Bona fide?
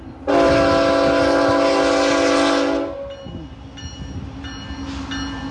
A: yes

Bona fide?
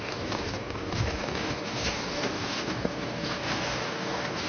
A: no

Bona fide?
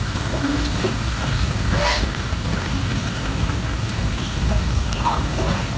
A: no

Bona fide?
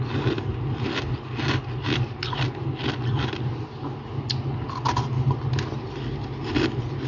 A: yes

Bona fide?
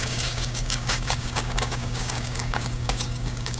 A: no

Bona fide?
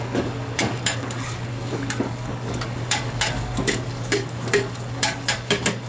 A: no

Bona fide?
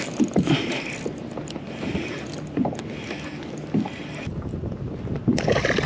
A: yes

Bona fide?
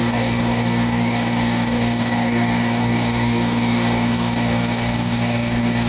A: no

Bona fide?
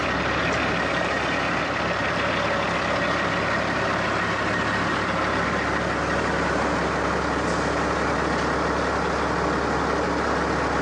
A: yes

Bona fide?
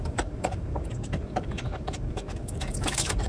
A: no